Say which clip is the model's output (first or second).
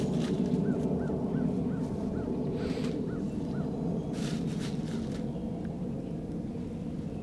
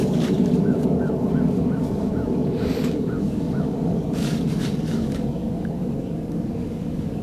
second